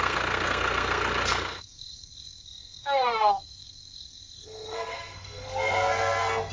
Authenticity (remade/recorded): remade